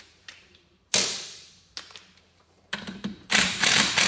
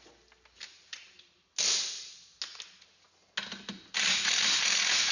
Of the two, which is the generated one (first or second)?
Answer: first